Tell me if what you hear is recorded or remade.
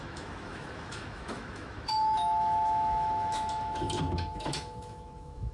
remade